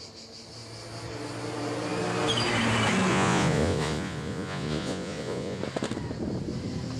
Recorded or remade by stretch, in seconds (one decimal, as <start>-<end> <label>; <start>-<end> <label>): 0.0-3.1 recorded; 3.1-5.6 remade; 5.6-7.0 recorded